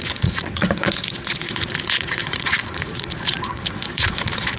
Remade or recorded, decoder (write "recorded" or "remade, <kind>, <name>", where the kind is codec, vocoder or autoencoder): remade, vocoder, Vocos